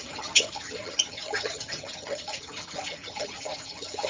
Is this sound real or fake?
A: fake